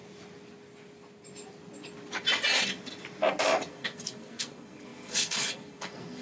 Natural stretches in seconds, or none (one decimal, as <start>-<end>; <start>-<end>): 0.0-3.7